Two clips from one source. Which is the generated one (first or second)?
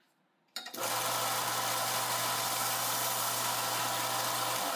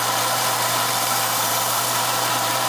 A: second